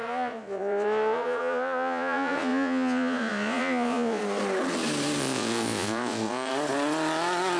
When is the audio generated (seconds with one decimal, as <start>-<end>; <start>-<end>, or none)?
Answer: 0.0-4.2; 5.2-6.5